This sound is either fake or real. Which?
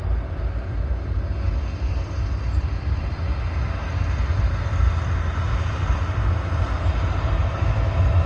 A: real